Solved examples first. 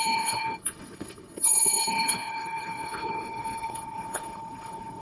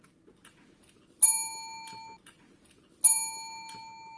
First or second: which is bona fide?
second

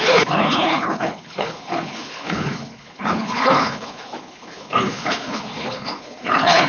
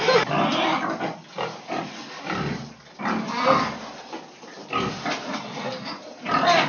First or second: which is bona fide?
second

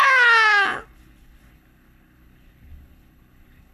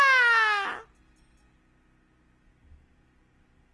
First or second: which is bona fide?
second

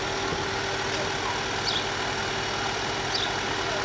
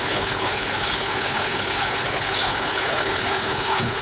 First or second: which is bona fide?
first